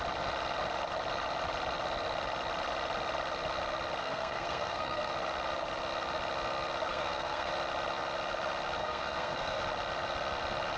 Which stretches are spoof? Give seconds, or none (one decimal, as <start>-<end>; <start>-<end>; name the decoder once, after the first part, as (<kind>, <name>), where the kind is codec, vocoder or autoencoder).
4.0-5.1 (codec, SNAC); 6.9-7.5; 8.8-9.6